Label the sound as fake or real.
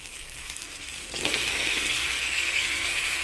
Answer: fake